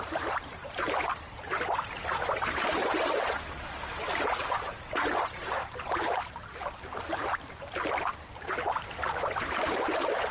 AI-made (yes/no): yes